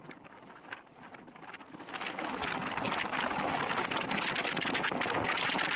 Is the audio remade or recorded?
recorded